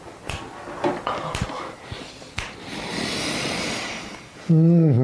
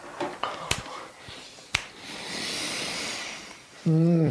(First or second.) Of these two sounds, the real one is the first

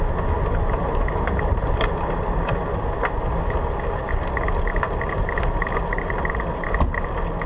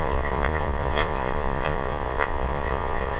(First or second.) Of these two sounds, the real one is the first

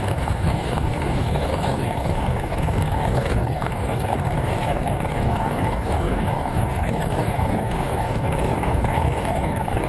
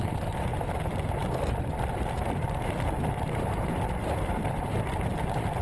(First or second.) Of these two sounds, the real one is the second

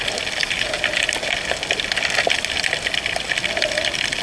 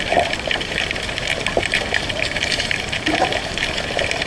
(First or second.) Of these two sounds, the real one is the first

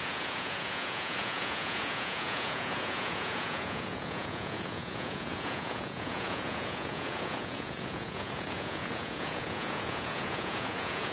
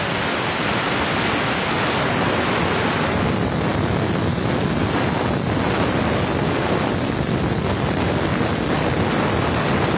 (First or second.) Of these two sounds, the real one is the second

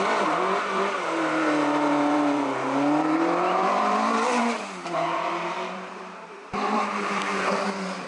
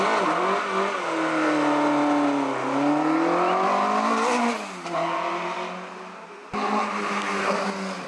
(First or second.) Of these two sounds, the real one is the second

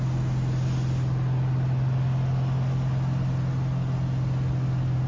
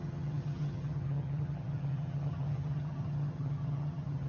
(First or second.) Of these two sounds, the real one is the first